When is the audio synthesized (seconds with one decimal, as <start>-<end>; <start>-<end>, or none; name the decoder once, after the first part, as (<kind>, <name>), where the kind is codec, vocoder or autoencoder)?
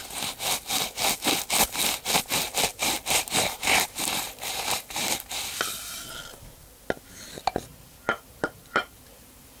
2.7-5.1 (vocoder, BigVGAN v2); 7.7-9.6